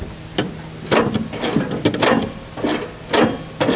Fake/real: real